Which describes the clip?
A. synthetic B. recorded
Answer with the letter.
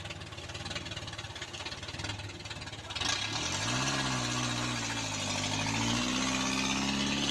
B